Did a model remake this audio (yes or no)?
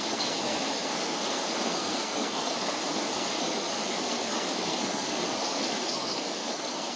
yes